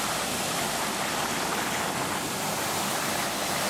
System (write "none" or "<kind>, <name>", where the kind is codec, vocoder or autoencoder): none